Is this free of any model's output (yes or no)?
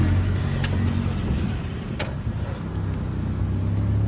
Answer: yes